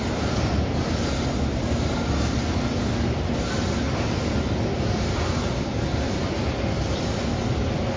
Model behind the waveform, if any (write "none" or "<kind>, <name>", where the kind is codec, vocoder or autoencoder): none